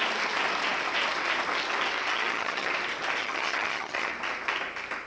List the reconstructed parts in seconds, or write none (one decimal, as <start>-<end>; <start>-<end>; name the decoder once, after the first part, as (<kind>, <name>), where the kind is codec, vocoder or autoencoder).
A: 2.1-2.7 (vocoder, HiFi-GAN); 3.2-4.1